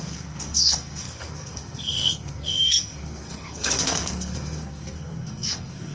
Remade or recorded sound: remade